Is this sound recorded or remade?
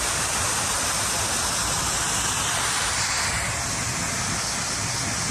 recorded